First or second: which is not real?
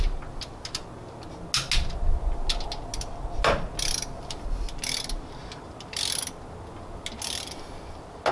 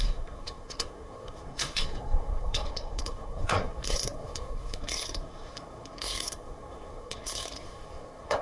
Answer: second